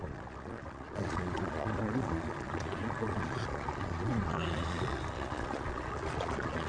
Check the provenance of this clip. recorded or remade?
remade